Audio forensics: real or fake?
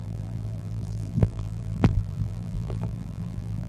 fake